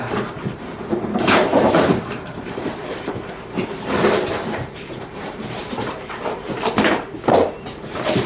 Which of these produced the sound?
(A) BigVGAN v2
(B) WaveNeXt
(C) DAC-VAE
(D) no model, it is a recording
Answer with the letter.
A